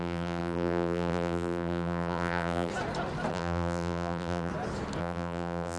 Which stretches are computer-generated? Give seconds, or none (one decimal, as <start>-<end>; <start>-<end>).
0.0-2.7; 3.3-4.5; 5.0-5.8

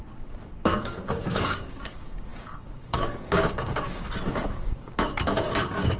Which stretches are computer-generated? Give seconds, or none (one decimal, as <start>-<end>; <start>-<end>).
0.0-6.0

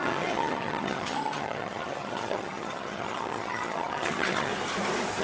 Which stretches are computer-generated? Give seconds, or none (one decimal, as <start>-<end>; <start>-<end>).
0.0-4.5

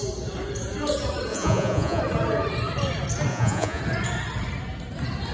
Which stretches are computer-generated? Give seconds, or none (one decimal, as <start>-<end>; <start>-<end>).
1.3-2.0; 3.3-3.8